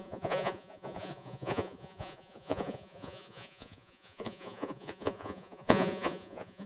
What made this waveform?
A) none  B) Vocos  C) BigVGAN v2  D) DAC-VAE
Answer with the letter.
B